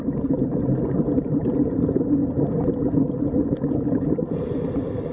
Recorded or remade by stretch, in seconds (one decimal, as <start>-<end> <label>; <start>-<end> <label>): 0.0-2.2 remade; 2.2-4.4 recorded; 4.4-5.1 remade